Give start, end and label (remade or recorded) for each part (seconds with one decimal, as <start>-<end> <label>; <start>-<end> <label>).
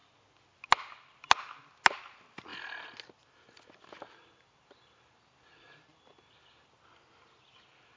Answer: 0.0-8.0 recorded